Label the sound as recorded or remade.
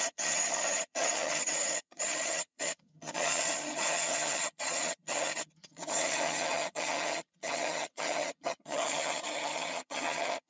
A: remade